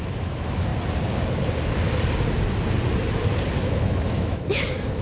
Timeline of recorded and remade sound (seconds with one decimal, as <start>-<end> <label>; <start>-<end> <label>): 0.0-0.7 remade; 0.7-3.7 recorded; 3.7-5.0 remade